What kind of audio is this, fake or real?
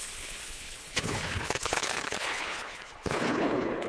fake